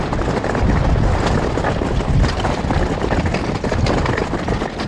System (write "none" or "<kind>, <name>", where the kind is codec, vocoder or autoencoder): none